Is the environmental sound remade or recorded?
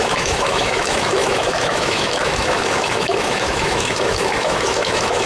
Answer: remade